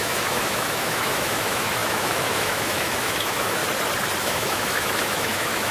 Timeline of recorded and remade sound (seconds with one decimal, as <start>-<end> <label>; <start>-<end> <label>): 0.0-3.6 remade; 3.6-4.2 recorded; 4.2-5.7 remade